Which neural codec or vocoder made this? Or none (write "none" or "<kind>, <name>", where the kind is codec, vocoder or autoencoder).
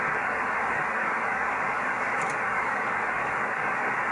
codec, DAC